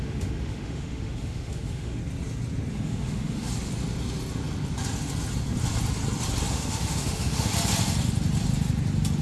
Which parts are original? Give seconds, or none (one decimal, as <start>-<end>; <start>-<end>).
2.0-2.7; 3.5-6.5; 7.5-9.2